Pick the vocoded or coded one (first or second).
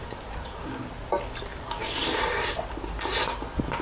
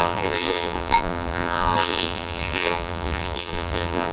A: second